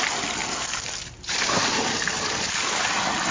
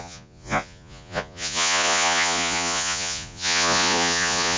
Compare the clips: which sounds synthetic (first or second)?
second